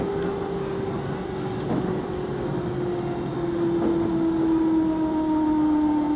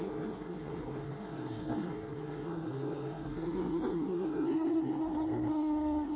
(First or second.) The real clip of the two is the first